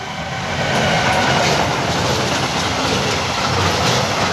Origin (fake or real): real